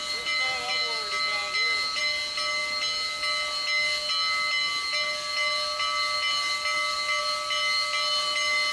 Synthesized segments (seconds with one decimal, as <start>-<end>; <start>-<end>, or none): none